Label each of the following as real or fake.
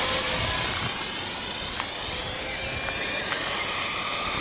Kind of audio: real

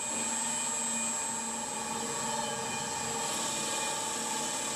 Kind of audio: real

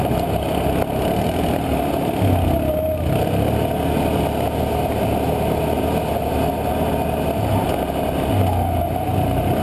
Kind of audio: real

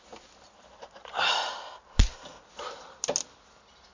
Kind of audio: real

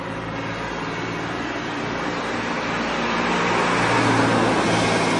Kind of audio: real